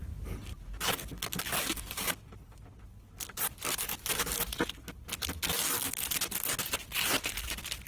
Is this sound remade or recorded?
recorded